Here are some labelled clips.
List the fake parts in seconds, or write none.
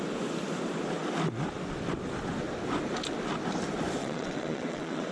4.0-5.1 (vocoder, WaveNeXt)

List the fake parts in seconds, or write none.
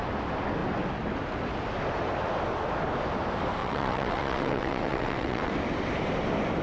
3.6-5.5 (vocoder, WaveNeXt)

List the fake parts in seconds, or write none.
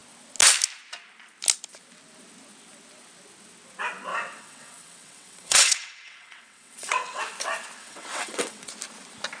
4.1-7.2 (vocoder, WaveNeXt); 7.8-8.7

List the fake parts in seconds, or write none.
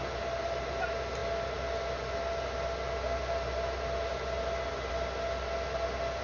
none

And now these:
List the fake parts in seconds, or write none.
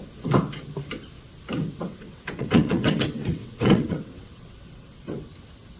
1.8-5.3 (vocoder, WaveNeXt)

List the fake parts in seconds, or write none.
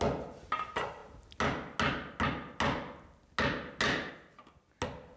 none